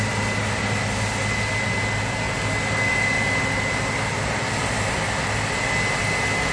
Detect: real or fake real